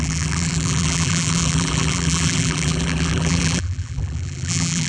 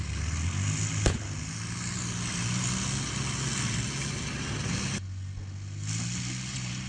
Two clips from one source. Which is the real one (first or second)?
second